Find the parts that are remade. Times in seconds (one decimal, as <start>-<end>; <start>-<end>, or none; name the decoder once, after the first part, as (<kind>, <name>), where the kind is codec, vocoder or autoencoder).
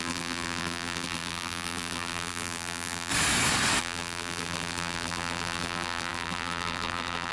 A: 0.0-3.1 (vocoder, BigVGAN v2); 3.8-7.3